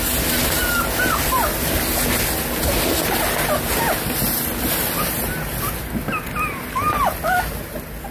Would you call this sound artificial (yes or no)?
no